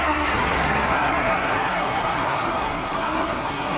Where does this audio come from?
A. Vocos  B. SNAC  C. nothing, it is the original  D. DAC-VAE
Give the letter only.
B